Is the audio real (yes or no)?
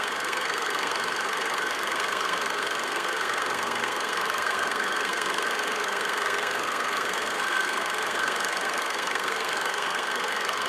no